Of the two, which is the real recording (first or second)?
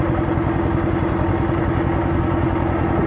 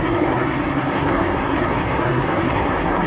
first